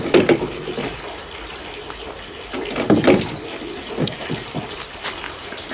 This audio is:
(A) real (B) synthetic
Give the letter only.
A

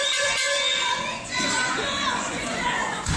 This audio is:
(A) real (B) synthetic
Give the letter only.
B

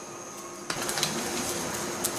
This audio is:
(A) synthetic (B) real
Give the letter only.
B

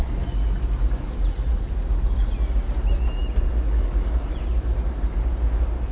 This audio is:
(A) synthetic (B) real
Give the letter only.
B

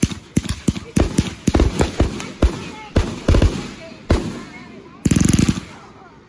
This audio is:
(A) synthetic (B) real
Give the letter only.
B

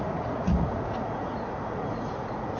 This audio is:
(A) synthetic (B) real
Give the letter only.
A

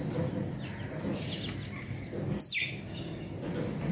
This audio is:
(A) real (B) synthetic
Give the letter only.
A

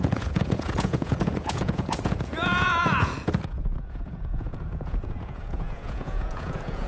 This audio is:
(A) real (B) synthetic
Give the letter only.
B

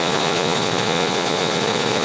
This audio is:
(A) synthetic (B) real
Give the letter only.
A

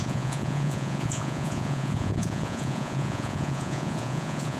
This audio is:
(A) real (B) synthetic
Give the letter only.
B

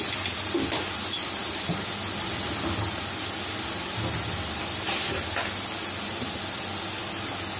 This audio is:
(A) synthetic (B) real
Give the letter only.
B